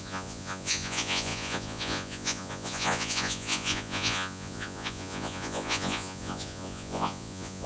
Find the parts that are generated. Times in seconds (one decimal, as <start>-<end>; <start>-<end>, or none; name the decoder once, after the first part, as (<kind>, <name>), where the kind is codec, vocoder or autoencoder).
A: 0.0-7.7 (vocoder, Vocos)